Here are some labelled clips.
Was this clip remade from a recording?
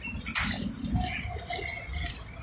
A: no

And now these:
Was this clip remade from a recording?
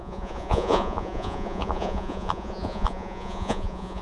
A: yes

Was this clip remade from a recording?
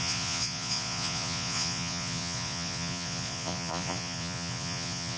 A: yes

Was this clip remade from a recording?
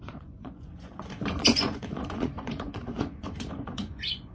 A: yes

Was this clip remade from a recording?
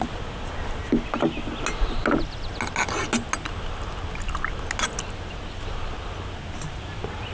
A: no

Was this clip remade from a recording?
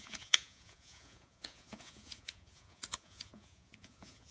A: yes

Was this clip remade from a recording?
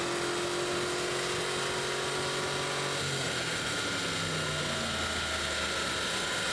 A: no